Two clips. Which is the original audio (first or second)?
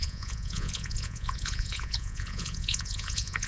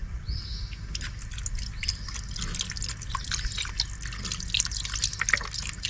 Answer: second